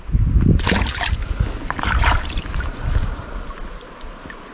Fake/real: real